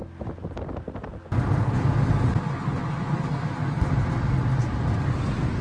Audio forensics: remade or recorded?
recorded